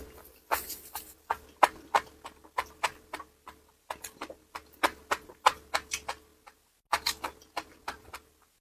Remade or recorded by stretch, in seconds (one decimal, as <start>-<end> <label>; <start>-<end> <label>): 0.0-8.6 recorded